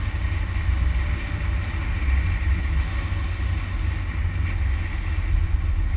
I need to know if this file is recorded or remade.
recorded